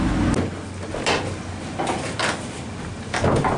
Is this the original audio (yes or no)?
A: yes